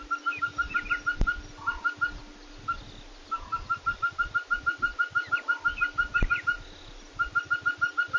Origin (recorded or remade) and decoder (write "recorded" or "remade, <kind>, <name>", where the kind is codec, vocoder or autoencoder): recorded